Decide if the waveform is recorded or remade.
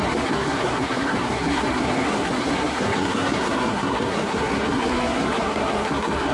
remade